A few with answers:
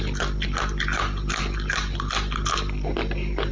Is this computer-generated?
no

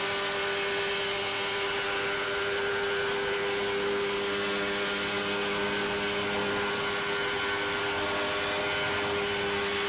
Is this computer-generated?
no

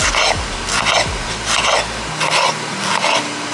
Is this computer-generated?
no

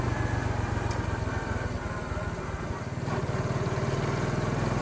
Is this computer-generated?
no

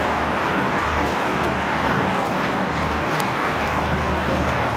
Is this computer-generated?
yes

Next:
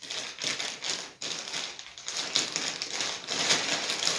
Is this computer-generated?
no